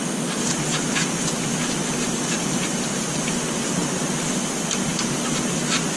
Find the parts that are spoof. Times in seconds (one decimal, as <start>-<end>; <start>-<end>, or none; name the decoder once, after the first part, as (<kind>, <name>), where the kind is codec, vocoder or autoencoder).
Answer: none